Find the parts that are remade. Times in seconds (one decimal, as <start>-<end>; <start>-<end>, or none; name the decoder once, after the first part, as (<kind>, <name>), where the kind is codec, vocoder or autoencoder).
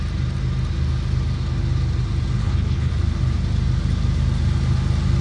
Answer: 2.4-2.9 (codec, HILCodec)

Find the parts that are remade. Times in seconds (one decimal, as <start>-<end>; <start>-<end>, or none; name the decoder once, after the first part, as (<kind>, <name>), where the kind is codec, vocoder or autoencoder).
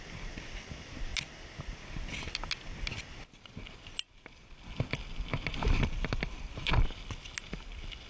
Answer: none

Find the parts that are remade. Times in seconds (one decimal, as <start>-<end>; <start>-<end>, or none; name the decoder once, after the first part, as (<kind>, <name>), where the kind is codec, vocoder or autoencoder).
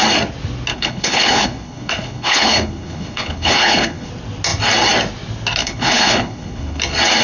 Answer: 0.7-4.1 (codec, HILCodec); 5.6-6.8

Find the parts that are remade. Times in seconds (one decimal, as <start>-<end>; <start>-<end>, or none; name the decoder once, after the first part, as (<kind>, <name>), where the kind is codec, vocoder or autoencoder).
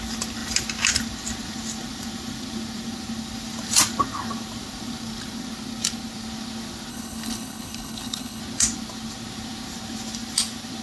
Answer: 6.9-8.4 (codec, HILCodec)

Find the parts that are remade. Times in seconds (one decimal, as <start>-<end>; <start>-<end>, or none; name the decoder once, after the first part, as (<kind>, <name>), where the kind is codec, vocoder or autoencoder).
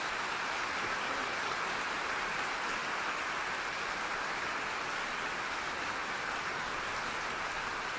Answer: none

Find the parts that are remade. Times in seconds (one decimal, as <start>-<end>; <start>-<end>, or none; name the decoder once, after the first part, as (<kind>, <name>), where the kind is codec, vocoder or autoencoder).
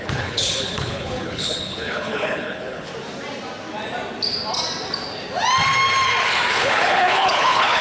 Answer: 0.0-2.9 (codec, HILCodec); 6.5-7.8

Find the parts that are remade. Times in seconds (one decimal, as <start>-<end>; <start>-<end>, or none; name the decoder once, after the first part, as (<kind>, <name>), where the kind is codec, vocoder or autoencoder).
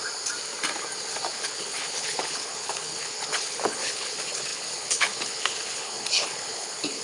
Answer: 1.3-7.0 (codec, HILCodec)